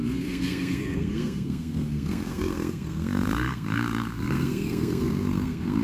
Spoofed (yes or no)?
yes